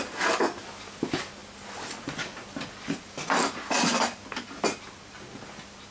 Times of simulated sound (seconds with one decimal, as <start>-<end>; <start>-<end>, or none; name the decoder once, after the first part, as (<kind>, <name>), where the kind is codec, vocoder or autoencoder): none